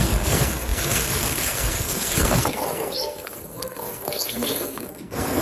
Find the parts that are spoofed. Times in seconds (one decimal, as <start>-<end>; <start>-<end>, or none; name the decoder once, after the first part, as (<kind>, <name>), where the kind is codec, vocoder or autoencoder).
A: 0.0-5.4 (codec, SNAC)